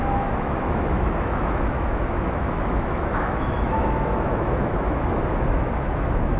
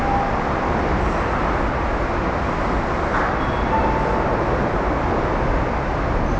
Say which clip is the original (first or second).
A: second